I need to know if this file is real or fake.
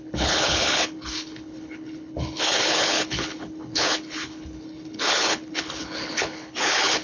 fake